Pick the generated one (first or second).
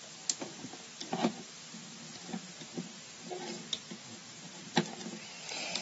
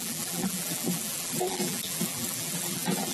second